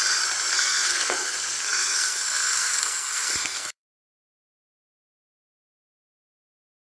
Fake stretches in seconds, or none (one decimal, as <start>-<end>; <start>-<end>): 0.5-4.7